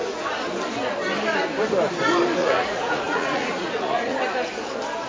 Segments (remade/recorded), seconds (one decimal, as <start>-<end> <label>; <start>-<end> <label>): 0.0-2.4 recorded; 2.4-4.2 remade; 4.2-5.1 recorded